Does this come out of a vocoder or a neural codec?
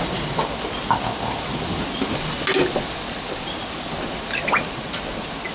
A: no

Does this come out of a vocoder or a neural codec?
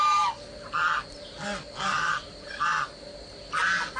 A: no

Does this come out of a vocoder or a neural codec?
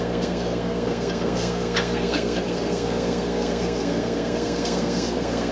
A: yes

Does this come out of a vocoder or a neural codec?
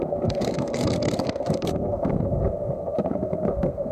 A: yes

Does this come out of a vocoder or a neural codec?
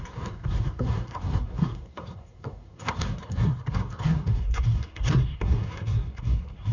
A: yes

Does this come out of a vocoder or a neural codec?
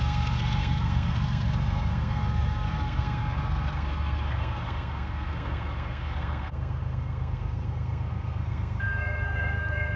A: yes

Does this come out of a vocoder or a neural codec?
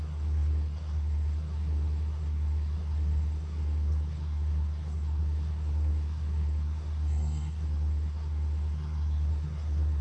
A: yes